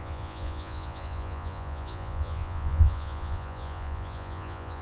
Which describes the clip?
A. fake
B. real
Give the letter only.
A